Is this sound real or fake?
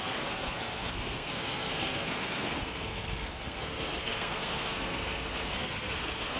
fake